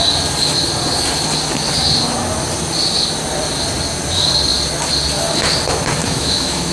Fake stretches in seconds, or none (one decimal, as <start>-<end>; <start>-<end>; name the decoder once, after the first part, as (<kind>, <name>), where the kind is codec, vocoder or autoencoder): 6.0-6.7 (autoencoder, DAC-VAE)